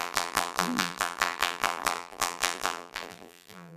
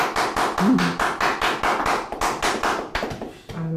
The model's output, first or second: first